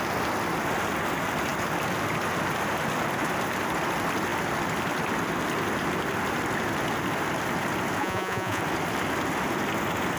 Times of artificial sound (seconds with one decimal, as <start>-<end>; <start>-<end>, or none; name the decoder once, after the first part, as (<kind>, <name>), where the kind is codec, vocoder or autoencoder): 8.0-8.6 (vocoder, Vocos)